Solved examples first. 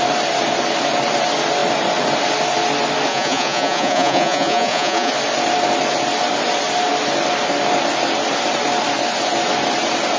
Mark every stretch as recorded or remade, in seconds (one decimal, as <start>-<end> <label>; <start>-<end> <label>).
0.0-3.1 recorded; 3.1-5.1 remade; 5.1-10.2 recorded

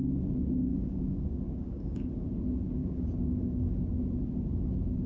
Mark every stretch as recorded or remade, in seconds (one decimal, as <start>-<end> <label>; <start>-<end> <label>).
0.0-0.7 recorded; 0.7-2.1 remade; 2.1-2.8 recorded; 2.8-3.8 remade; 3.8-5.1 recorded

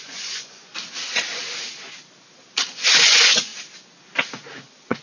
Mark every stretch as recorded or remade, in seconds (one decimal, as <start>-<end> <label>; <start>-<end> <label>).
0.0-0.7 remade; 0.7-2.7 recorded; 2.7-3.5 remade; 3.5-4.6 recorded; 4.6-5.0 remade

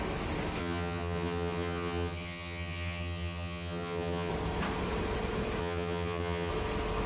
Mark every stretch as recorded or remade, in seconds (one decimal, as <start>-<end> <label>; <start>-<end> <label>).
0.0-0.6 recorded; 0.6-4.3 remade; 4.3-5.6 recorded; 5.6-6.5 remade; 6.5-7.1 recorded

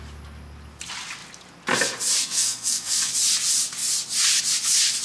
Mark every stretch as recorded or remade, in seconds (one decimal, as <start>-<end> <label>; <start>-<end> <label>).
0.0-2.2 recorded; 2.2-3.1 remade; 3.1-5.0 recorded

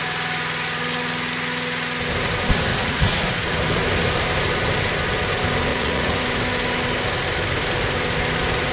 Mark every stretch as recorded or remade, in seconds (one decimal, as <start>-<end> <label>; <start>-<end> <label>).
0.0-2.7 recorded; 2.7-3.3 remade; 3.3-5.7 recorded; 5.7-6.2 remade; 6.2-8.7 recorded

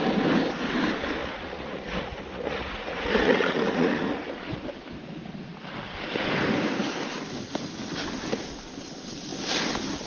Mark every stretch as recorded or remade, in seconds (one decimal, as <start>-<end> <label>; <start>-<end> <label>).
0.0-1.2 recorded; 1.2-4.6 remade; 4.6-10.1 recorded

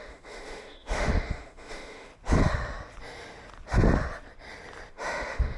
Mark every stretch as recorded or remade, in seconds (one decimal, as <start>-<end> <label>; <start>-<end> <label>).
0.0-2.1 remade; 2.1-4.9 recorded; 4.9-5.6 remade